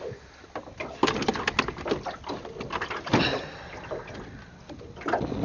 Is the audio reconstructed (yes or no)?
no